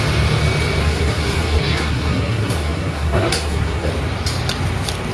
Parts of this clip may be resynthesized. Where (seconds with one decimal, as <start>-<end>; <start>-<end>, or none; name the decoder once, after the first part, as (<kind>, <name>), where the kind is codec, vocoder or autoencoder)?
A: 0.8-3.9 (codec, SNAC)